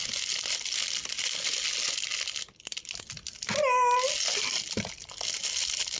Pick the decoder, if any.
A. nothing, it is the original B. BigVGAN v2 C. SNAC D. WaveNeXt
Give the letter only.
A